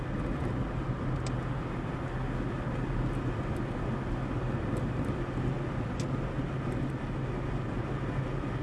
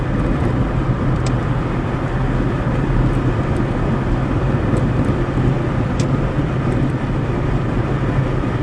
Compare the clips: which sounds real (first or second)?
first